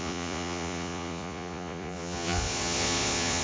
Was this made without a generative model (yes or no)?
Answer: no